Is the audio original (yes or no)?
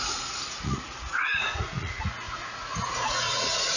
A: no